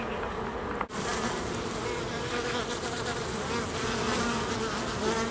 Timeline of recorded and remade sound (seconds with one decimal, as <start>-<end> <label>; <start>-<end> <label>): 0.0-5.3 recorded